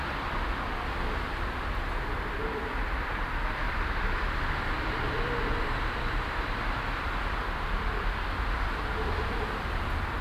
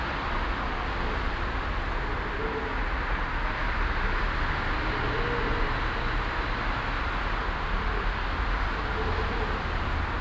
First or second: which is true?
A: second